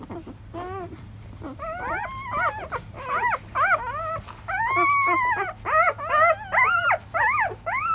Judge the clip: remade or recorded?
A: recorded